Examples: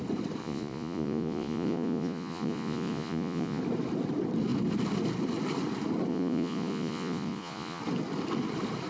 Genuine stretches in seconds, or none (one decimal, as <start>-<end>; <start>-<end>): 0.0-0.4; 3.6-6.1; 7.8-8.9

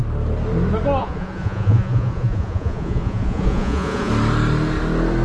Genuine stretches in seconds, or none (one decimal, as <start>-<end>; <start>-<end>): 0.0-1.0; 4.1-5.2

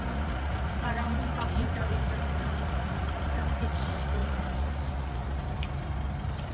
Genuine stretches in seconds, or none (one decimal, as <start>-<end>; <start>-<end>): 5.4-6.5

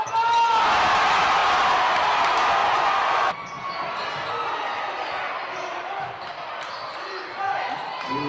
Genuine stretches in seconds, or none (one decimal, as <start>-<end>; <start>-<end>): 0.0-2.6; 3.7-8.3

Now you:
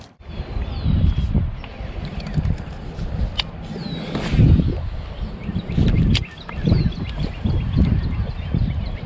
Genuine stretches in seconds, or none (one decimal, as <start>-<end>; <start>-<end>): 0.0-9.1

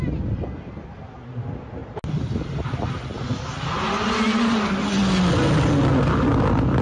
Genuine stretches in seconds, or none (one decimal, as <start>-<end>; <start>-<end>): 0.0-6.8

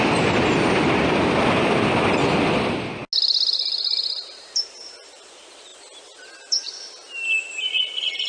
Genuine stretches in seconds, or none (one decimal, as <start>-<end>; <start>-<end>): 0.0-8.3